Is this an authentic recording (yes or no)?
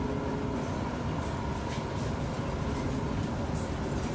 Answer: yes